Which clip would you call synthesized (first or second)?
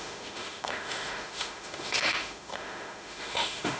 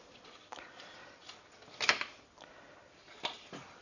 first